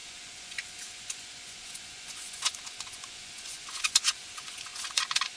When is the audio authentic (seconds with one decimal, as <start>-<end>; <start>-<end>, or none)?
none